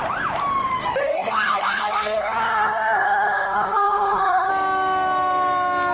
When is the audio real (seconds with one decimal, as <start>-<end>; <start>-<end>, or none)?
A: 0.0-1.0; 4.5-5.9

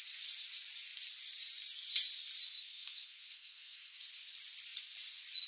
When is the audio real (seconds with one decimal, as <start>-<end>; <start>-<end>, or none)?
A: 0.0-2.6; 4.0-5.5

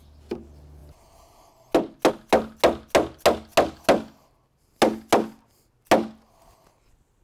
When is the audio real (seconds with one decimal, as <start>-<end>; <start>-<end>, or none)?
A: 0.0-7.2

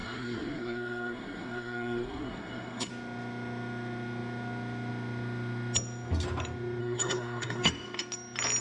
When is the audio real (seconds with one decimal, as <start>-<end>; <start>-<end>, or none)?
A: 2.9-6.8; 7.6-8.6

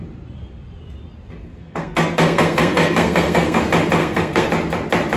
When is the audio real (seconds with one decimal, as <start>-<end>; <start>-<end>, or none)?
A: 0.0-1.4; 3.6-4.0; 4.5-5.2